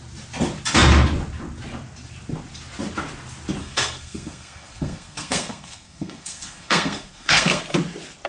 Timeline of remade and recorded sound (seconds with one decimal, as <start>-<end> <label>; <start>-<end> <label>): 0.0-3.6 recorded; 3.6-7.6 remade; 7.6-8.3 recorded

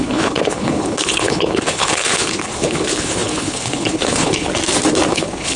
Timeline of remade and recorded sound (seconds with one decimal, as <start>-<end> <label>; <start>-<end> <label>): 0.0-4.5 remade; 4.5-5.1 recorded; 5.1-5.6 remade

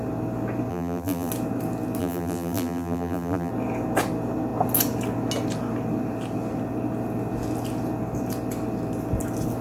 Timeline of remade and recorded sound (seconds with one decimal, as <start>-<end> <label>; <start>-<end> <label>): 0.0-0.7 recorded; 0.7-1.3 remade; 1.3-2.0 recorded; 2.0-3.5 remade; 3.5-9.6 recorded

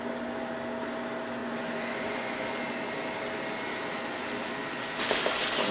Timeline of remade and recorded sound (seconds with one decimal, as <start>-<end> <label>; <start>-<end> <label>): 0.0-1.4 recorded; 1.4-2.4 remade; 2.4-5.7 recorded

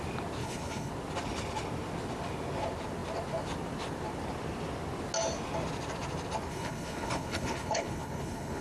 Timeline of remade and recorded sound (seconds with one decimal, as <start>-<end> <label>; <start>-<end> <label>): 0.0-0.4 recorded; 0.4-0.9 remade; 0.9-6.5 recorded; 6.5-8.6 remade

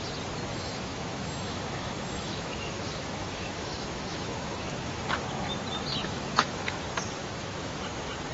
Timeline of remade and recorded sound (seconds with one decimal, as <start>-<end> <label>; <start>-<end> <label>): 0.0-0.5 recorded; 0.5-5.0 remade; 5.0-6.0 recorded; 6.0-6.8 remade; 6.8-7.2 recorded; 7.2-7.8 remade; 7.8-8.3 recorded

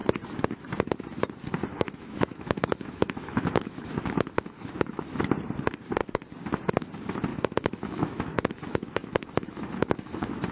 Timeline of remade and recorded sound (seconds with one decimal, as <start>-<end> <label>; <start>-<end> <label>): 0.0-1.7 recorded; 1.7-5.2 remade; 5.2-7.3 recorded; 7.3-10.5 remade